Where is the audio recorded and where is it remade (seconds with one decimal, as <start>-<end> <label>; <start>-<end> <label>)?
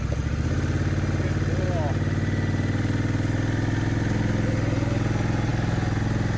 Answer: 0.0-6.4 recorded